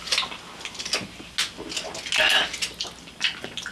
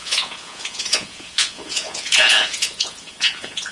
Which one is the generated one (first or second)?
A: second